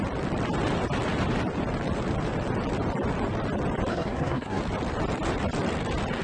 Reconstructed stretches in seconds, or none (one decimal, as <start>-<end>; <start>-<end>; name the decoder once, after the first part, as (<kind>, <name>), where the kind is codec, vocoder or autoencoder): 3.9-4.6 (codec, SNAC)

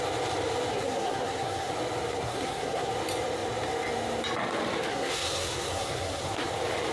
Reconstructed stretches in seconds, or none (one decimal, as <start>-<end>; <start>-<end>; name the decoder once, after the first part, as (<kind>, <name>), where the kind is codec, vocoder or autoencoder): 0.7-1.7 (codec, SNAC); 2.1-2.9; 4.9-6.5